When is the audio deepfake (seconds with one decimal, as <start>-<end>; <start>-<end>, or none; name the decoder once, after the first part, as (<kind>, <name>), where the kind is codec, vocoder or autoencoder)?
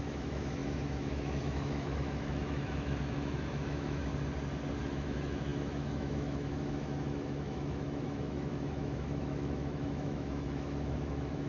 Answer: 0.0-4.1 (autoencoder, DAC-VAE); 4.8-11.5